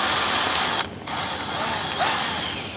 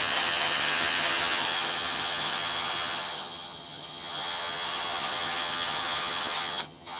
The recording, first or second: first